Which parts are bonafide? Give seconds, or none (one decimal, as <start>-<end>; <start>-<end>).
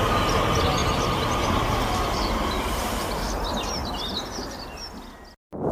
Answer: 0.0-0.8; 3.1-5.7